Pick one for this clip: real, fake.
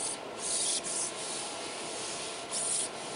real